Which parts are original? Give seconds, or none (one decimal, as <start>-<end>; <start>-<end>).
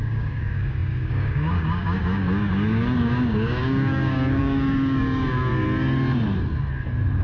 5.5-7.2